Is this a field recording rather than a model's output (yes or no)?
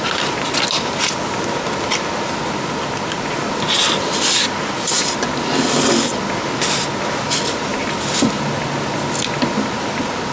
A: yes